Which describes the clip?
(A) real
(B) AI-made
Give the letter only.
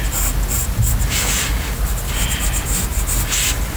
A